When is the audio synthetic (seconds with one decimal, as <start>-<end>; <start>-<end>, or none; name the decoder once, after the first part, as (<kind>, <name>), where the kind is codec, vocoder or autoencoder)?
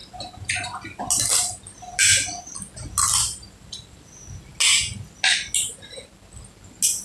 none